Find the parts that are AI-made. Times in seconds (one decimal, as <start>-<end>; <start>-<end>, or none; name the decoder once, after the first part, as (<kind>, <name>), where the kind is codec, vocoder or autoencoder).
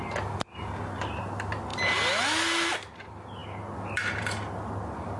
none